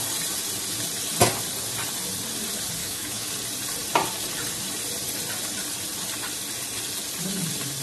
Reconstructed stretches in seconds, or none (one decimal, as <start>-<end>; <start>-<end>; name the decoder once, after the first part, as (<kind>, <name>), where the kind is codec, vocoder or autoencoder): 2.8-3.3 (autoencoder, DAC-VAE)